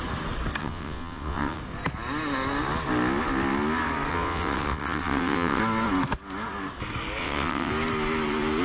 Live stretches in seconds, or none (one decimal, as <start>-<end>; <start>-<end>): 0.0-0.6; 1.6-4.1; 5.6-7.2; 7.7-8.6